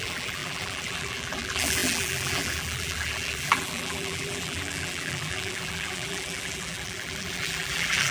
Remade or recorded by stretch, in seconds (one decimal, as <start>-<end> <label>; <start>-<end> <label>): 0.0-8.1 remade